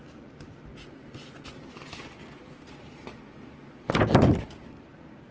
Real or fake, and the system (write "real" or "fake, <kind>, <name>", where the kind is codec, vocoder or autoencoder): real